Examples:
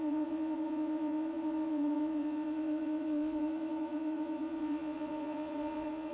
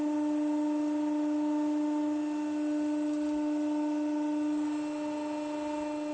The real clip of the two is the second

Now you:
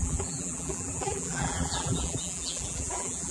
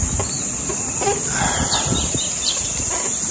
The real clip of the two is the second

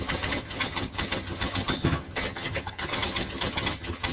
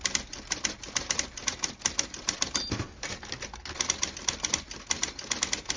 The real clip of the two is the second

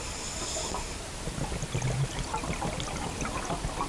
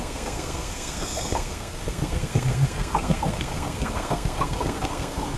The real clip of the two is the first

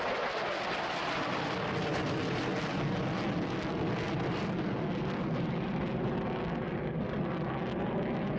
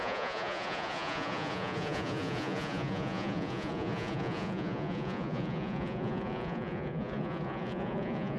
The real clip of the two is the first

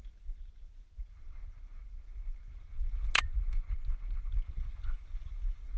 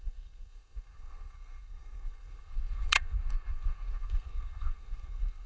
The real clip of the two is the first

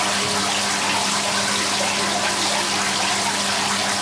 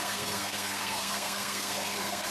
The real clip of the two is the first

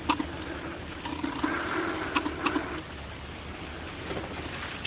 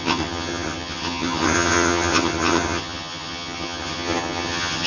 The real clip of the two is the first